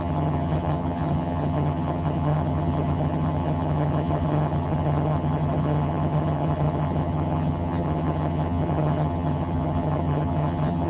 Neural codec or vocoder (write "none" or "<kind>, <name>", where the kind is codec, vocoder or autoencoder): vocoder, HiFi-GAN